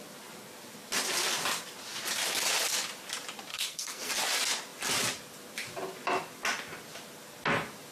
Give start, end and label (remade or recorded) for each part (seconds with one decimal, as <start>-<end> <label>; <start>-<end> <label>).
0.0-3.5 recorded; 3.5-4.1 remade; 4.1-7.9 recorded